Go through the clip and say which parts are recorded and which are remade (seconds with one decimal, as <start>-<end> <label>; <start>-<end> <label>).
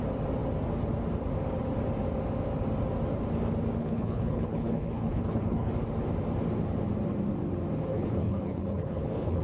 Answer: 0.0-3.8 recorded; 3.8-5.7 remade; 5.7-7.9 recorded; 7.9-9.4 remade